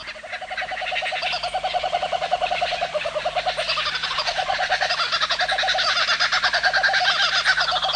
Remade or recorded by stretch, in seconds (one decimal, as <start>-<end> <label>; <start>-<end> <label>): 0.0-1.7 recorded; 1.7-3.1 remade; 3.1-4.0 recorded; 4.0-4.9 remade; 4.9-8.0 recorded